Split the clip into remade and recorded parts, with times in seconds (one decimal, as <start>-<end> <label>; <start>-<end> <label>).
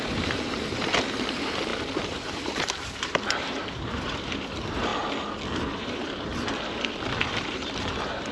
0.0-4.9 remade; 4.9-5.7 recorded; 5.7-6.3 remade; 6.3-7.2 recorded; 7.2-8.3 remade